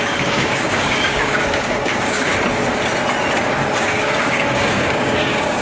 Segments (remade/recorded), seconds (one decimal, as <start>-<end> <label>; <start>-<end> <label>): 0.0-2.3 remade; 2.3-3.8 recorded; 3.8-5.6 remade